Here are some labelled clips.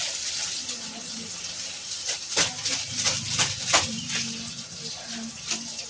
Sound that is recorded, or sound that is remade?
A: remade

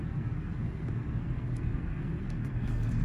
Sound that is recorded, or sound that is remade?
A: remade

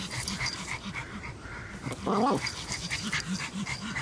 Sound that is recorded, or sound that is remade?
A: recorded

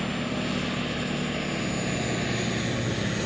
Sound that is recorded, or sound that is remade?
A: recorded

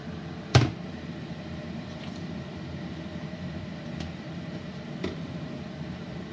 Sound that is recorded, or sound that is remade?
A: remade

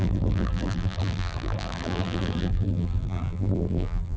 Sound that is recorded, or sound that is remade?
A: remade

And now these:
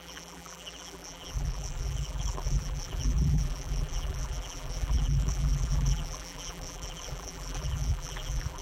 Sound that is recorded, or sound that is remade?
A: remade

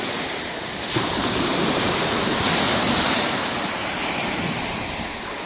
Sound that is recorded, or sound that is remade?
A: remade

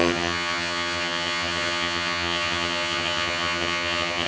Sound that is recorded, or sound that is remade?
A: remade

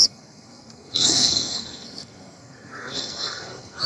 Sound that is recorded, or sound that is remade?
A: remade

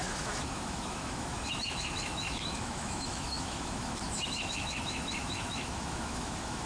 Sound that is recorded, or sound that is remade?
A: remade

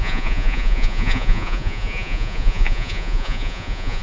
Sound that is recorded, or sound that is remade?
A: remade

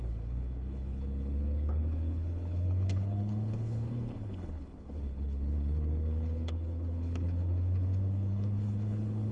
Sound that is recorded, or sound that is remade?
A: remade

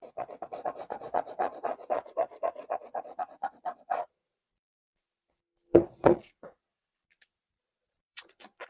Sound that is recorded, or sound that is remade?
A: remade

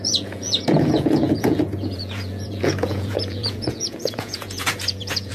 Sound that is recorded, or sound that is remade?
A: remade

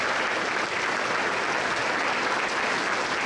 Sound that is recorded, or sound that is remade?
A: recorded